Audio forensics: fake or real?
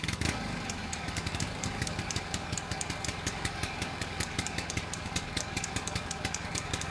fake